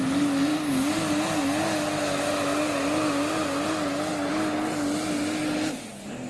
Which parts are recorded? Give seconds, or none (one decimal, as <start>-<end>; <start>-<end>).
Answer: 0.0-5.4